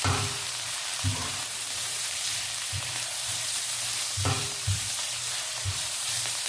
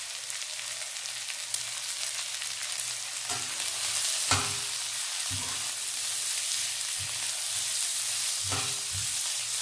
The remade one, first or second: first